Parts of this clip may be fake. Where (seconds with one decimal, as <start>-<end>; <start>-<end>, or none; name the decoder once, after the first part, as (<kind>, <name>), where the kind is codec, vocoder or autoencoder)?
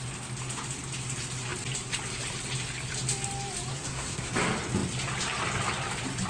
3.7-4.3 (codec, SNAC)